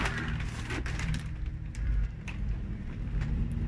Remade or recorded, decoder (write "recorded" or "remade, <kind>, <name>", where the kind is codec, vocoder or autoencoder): remade, vocoder, BigVGAN v2